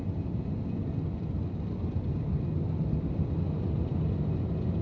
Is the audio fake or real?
real